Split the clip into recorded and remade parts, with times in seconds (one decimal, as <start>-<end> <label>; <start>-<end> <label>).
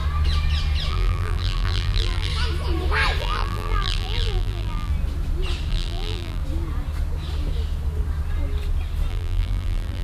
0.0-0.9 recorded; 0.9-2.3 remade; 2.3-3.2 recorded; 3.2-4.9 remade; 4.9-5.7 recorded; 5.7-6.4 remade; 6.4-9.1 recorded; 9.1-10.0 remade